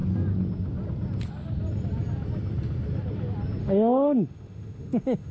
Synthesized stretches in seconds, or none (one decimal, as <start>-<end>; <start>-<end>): 3.6-5.3

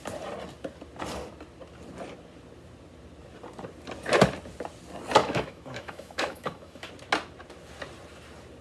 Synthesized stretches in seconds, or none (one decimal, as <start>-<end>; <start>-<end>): 5.2-6.9

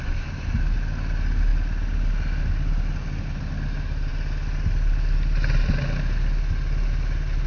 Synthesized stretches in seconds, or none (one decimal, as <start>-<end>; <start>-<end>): none

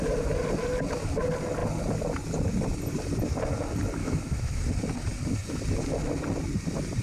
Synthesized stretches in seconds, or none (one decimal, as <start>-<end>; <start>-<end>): 4.0-4.6

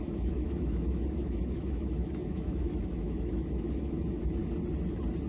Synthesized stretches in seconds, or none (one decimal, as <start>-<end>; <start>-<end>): 0.0-4.4

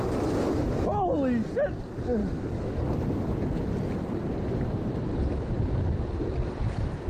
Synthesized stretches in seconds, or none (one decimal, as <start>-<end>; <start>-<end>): 2.2-2.8

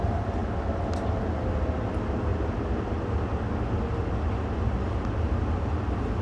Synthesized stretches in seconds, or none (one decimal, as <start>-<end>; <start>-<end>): none